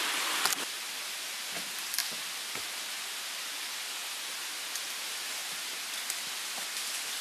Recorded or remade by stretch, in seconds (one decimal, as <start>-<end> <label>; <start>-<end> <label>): 0.0-7.2 recorded